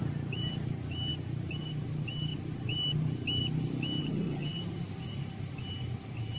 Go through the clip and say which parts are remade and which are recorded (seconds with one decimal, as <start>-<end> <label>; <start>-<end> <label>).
0.0-4.0 recorded; 4.0-4.6 remade; 4.6-6.4 recorded